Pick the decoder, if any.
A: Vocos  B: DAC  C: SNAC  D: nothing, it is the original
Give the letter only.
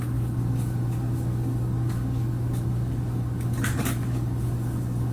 B